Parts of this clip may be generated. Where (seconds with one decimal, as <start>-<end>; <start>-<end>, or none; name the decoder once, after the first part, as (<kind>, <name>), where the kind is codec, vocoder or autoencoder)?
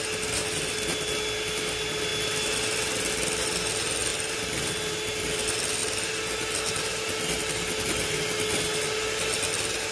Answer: none